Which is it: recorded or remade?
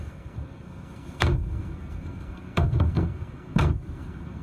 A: remade